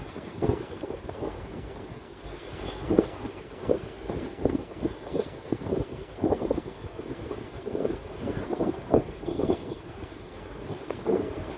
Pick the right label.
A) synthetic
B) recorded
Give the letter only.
A